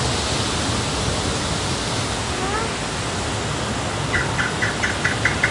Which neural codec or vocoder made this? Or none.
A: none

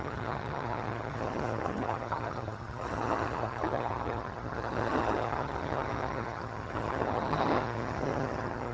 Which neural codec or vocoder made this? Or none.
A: vocoder, HiFi-GAN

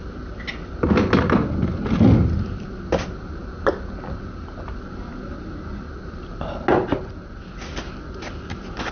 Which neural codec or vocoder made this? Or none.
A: none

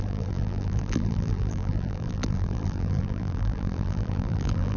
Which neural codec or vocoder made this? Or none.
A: vocoder, BigVGAN v2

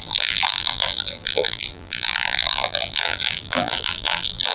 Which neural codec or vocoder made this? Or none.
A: vocoder, BigVGAN v2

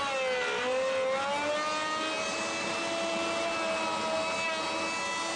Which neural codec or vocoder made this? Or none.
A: none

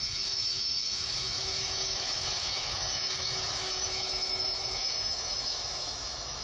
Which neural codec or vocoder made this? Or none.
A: autoencoder, DAC-VAE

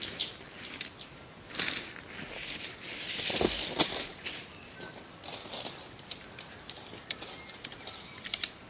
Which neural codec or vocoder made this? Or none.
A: none